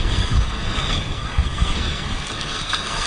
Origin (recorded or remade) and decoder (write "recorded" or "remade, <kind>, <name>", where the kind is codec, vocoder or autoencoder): remade, codec, SNAC